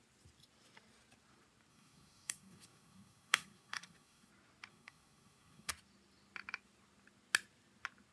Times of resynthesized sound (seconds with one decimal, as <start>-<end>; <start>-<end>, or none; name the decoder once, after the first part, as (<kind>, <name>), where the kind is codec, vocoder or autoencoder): 1.7-4.3 (codec, SNAC); 4.7-5.7